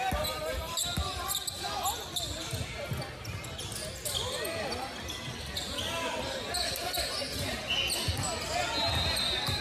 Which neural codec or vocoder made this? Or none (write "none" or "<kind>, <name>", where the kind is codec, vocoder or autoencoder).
none